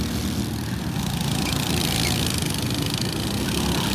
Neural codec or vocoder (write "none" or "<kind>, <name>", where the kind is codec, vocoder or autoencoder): none